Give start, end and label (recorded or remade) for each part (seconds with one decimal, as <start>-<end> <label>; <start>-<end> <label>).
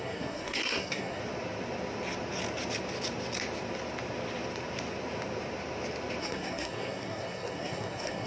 0.0-1.2 remade; 1.2-6.2 recorded; 6.2-8.3 remade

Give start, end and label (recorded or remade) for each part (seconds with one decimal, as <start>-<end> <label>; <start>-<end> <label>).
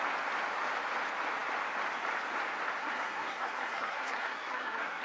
0.0-2.8 recorded; 2.8-5.0 remade